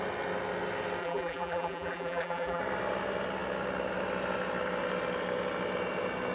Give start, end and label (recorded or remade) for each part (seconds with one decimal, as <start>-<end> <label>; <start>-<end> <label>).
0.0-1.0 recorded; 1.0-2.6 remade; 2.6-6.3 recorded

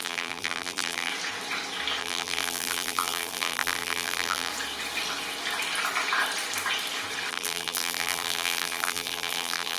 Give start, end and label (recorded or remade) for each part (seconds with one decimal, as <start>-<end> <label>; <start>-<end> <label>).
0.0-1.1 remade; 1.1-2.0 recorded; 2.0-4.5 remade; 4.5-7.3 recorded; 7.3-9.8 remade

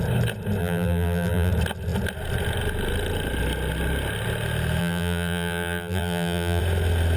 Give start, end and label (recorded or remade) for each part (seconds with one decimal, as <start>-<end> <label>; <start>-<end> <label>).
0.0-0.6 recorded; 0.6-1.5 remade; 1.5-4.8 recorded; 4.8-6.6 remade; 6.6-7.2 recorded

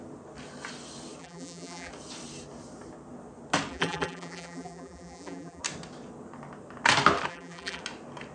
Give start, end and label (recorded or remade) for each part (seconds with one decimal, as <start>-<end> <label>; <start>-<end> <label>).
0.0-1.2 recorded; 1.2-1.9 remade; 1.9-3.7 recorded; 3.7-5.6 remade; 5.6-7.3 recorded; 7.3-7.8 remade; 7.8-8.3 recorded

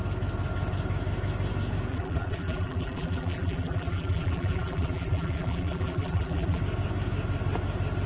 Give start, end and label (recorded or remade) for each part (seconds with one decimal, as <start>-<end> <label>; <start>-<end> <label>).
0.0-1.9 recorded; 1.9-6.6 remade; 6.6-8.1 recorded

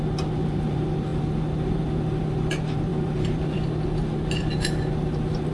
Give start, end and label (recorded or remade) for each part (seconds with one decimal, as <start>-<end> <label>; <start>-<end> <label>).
0.0-5.5 recorded

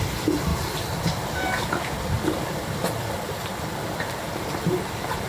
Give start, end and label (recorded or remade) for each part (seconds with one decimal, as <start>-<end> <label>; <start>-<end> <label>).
0.0-0.5 recorded; 0.5-3.0 remade; 3.0-3.4 recorded; 3.4-5.3 remade

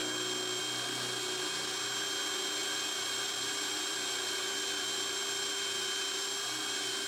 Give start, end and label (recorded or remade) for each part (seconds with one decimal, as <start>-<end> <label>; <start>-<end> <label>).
0.0-2.6 recorded; 2.6-4.4 remade; 4.4-7.1 recorded